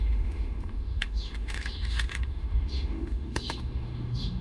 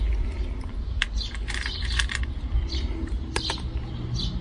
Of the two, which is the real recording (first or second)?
second